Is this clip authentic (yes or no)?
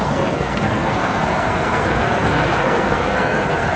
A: no